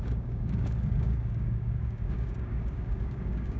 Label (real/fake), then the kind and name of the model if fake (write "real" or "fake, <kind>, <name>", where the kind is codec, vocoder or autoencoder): fake, codec, DAC